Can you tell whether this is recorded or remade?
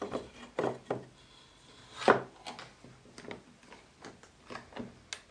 recorded